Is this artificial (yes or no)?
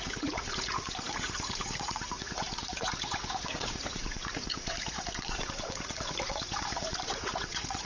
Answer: yes